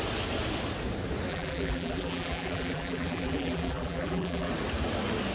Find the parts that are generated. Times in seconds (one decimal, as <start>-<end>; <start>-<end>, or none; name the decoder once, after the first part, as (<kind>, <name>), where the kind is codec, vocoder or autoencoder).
1.3-4.5 (vocoder, BigVGAN v2)